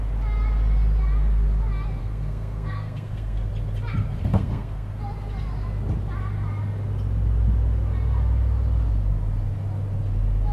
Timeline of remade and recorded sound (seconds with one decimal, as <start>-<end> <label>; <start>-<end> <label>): 0.0-2.0 recorded; 2.0-3.5 remade; 3.5-4.3 recorded; 4.3-5.0 remade; 5.0-10.5 recorded